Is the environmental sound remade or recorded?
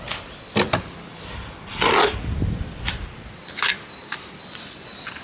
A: recorded